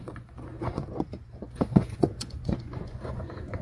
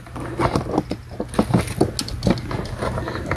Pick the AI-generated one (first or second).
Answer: first